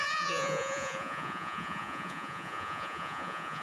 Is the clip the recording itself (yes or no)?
no